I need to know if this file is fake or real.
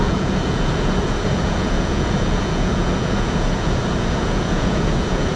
fake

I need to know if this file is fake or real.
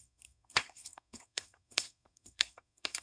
fake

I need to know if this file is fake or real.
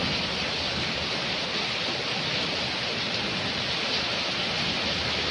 real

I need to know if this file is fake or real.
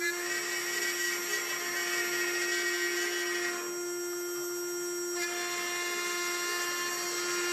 real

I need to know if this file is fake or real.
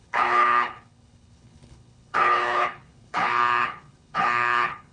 fake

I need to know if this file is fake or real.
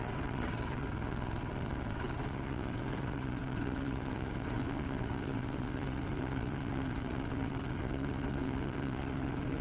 fake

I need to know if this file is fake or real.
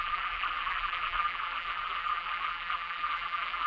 fake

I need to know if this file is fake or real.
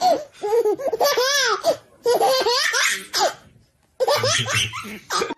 real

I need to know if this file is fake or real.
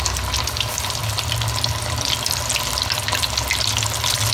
real